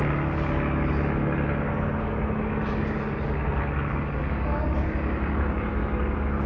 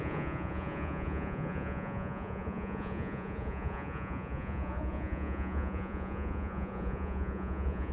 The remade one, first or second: second